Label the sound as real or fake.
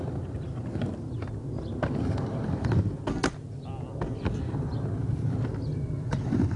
real